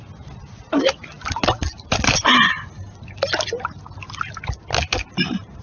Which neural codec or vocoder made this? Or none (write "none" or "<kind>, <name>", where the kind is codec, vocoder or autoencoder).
none